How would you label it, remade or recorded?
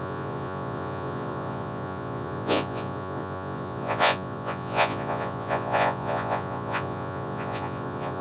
remade